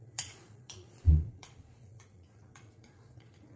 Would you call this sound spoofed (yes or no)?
yes